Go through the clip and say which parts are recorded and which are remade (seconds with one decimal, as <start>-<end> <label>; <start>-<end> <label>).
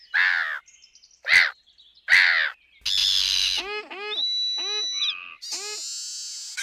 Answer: 0.0-6.6 recorded